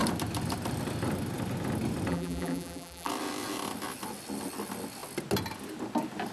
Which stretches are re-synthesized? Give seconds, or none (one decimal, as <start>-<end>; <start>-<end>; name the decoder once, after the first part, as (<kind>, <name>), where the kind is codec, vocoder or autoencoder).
2.1-3.1 (vocoder, BigVGAN v2)